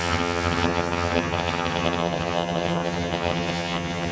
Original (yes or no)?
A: no